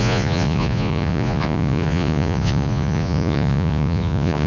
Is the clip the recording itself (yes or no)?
no